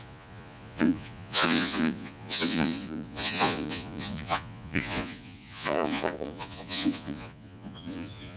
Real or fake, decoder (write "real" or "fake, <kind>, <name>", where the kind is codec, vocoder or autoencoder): fake, vocoder, Vocos